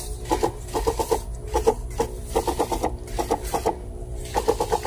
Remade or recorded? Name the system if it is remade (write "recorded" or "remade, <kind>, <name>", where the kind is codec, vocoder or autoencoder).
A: recorded